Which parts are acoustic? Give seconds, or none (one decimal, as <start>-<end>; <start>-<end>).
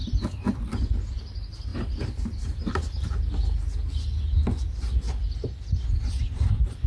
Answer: 0.6-1.7; 3.1-6.9